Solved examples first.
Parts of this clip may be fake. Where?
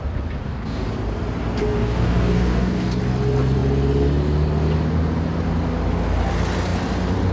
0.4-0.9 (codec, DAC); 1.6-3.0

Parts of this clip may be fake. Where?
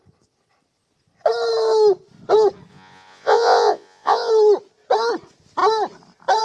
2.7-4.3 (vocoder, Vocos)